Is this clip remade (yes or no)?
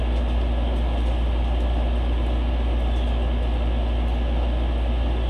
no